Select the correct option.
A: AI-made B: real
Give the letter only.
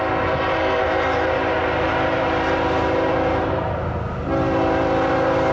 B